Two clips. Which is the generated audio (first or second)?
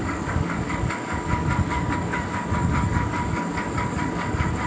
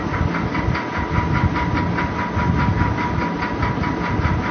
first